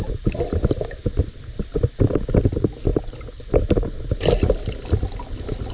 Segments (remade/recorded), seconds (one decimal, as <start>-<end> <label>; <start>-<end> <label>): 0.0-5.7 recorded